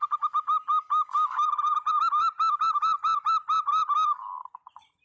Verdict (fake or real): real